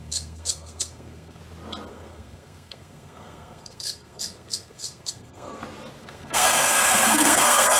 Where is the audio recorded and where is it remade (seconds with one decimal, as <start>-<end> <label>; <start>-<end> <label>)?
0.0-1.4 remade; 1.4-1.9 recorded; 1.9-5.6 remade; 5.6-6.0 recorded; 6.0-7.8 remade

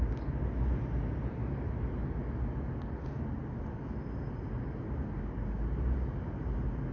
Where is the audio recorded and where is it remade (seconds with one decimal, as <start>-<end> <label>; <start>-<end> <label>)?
0.0-6.9 recorded

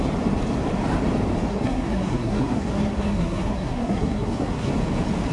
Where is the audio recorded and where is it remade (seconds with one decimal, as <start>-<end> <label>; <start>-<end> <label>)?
0.0-1.5 recorded; 1.5-4.7 remade; 4.7-5.3 recorded